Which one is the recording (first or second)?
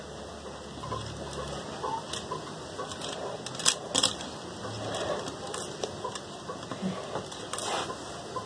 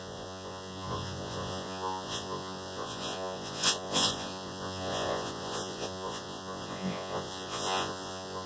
first